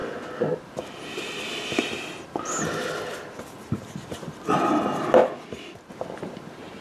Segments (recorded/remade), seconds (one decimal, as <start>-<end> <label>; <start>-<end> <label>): 0.0-6.8 recorded